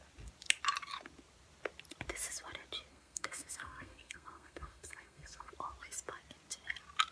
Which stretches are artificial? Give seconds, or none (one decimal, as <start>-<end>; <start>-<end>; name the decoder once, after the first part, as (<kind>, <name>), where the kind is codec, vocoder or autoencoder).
2.9-5.5 (codec, SNAC)